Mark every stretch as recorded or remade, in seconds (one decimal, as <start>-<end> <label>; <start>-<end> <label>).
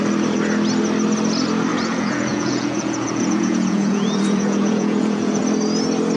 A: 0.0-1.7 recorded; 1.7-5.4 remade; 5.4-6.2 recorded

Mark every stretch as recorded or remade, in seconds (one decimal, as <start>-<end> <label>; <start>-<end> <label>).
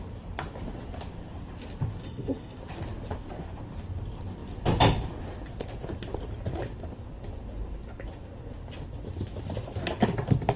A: 0.0-2.0 recorded; 2.0-2.6 remade; 2.6-10.6 recorded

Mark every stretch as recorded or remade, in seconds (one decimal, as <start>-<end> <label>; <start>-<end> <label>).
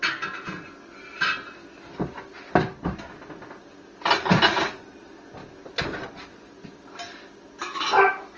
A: 0.0-7.6 recorded; 7.6-8.4 remade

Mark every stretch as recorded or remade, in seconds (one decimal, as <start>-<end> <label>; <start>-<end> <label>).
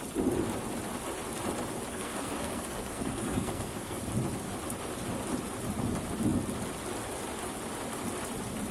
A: 0.0-1.9 recorded; 1.9-4.0 remade; 4.0-8.7 recorded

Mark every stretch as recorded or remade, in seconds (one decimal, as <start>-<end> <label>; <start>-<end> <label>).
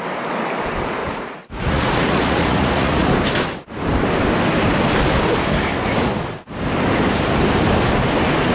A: 0.0-1.0 recorded; 1.0-3.1 remade; 3.1-8.5 recorded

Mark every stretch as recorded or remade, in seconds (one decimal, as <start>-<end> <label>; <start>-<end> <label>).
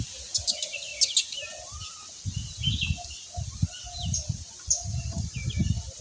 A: 0.0-6.0 recorded